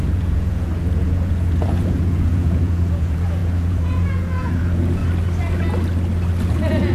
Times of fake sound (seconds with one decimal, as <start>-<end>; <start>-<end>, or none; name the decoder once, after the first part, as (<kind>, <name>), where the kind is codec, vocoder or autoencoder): 0.0-5.0 (vocoder, Vocos); 6.5-6.9